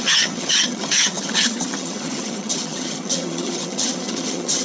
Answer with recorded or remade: remade